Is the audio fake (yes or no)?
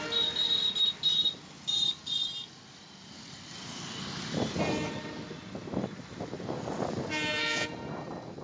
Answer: no